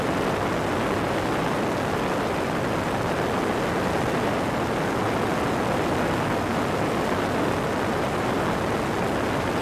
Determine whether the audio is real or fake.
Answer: real